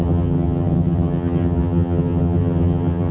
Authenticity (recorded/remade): remade